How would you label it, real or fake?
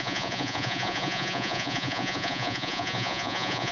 fake